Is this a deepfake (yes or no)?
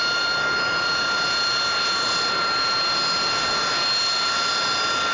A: no